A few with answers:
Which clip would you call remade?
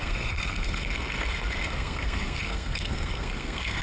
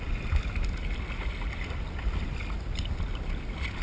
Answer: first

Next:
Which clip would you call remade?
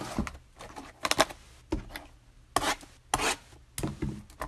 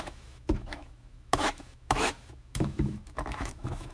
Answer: second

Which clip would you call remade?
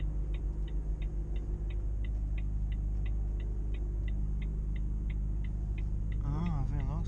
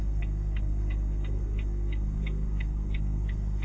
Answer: second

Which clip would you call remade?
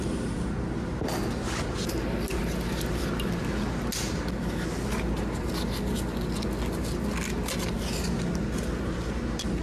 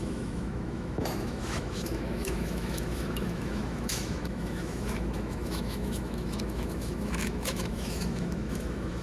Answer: second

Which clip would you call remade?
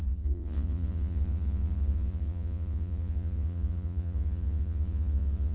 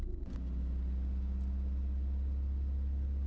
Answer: first